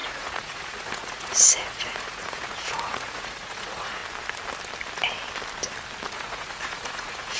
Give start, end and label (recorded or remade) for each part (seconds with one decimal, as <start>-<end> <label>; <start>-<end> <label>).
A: 0.0-4.0 remade; 4.0-6.1 recorded; 6.1-7.4 remade